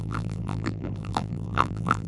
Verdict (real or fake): fake